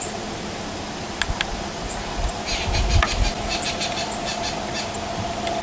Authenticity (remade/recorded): recorded